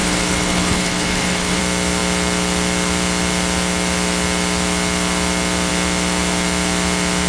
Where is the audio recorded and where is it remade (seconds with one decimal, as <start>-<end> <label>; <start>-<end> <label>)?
0.0-1.6 remade; 1.6-7.3 recorded